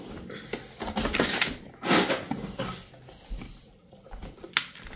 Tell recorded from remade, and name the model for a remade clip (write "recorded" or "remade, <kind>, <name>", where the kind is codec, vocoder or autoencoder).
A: recorded